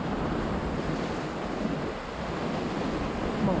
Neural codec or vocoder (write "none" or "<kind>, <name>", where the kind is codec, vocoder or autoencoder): none